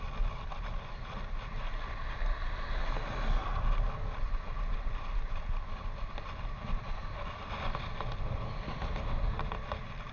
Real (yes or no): yes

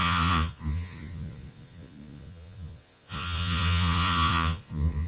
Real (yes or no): no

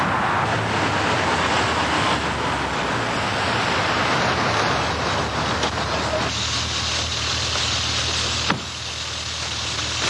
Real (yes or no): yes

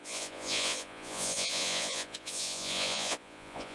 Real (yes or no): no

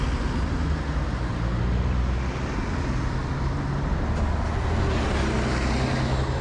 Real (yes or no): yes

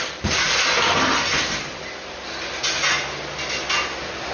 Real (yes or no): yes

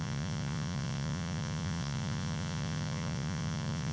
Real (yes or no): no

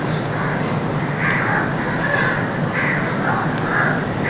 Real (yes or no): yes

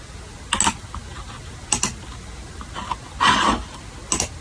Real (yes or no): yes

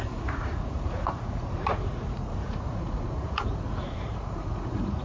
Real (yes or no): no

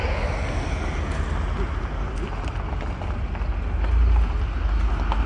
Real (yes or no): yes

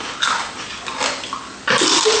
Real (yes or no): yes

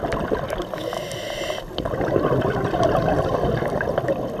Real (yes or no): yes